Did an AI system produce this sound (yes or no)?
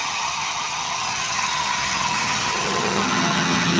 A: yes